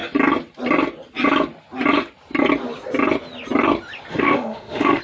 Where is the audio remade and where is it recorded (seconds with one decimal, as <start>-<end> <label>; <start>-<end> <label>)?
0.0-4.1 recorded; 4.1-5.0 remade